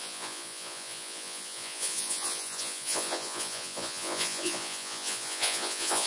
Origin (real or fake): fake